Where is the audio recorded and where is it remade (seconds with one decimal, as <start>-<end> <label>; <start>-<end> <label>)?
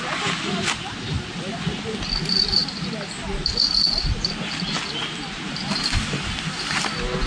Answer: 0.0-7.3 recorded